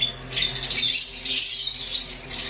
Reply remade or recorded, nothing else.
recorded